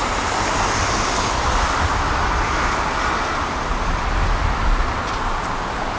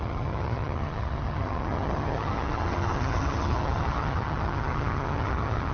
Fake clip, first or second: second